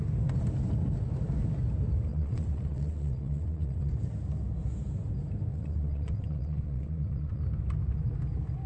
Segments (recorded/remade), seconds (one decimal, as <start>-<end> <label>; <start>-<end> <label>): 0.0-2.1 recorded; 2.1-3.9 remade; 3.9-5.5 recorded; 5.5-7.4 remade; 7.4-8.7 recorded